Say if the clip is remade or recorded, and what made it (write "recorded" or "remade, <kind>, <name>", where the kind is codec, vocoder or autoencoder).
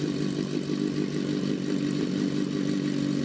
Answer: recorded